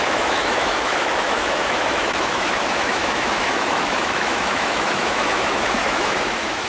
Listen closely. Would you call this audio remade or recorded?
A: remade